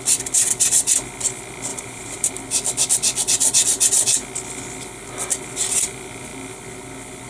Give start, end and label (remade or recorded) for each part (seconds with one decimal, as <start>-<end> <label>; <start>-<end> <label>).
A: 0.0-1.7 recorded; 1.7-2.3 remade; 2.3-7.3 recorded